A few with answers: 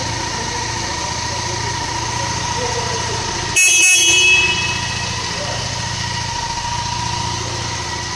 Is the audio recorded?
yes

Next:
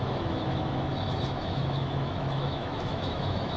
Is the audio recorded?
no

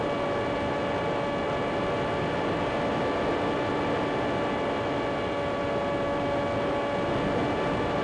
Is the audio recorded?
yes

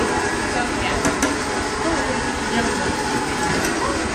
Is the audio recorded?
yes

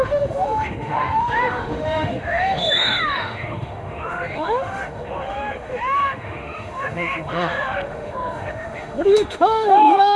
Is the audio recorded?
no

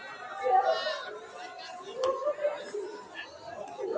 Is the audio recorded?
yes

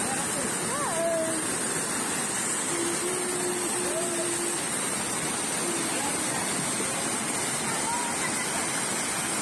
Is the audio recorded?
yes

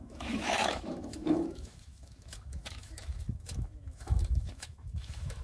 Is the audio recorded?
no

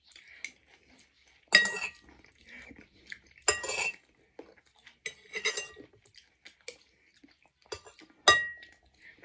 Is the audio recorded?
yes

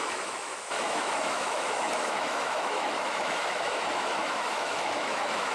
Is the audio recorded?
no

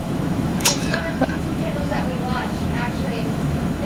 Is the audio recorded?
no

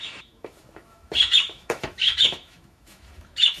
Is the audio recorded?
no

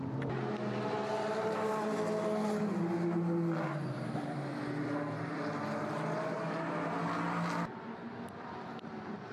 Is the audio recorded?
yes